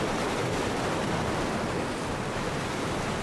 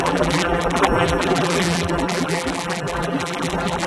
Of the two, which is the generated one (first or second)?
second